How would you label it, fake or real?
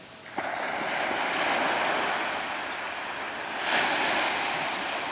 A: real